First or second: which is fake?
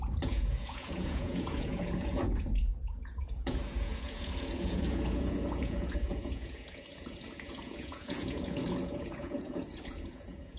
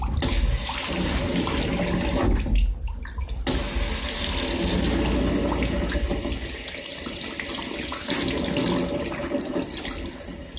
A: first